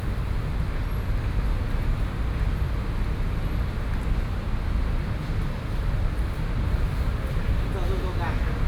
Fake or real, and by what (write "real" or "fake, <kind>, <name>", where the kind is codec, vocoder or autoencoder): real